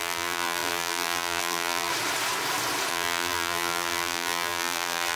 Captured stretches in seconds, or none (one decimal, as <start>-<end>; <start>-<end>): 1.9-2.9